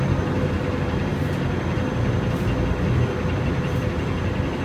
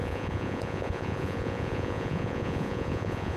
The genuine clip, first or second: first